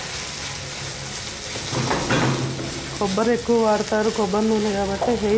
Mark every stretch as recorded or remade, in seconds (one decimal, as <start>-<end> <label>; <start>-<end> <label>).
0.0-5.4 recorded